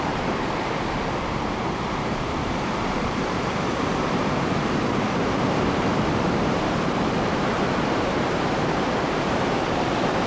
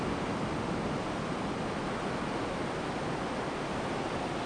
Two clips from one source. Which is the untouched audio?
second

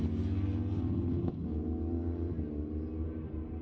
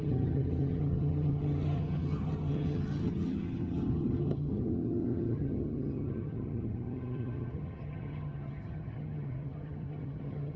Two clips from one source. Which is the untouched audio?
first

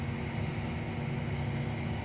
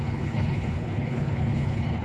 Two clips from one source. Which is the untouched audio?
first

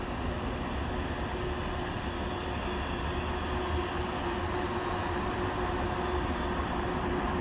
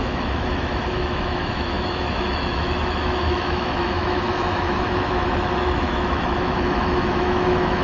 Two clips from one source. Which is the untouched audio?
first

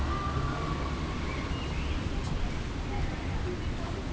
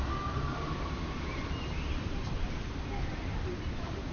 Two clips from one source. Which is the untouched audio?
first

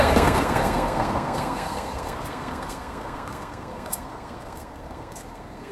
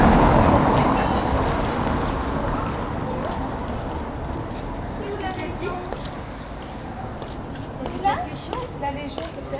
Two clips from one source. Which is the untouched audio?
second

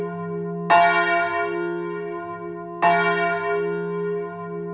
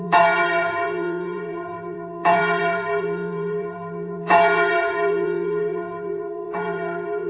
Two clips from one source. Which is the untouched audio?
first